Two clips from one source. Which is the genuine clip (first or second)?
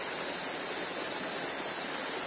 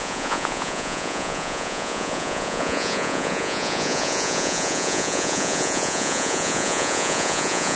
first